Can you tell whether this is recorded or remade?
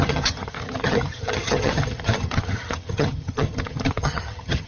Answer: remade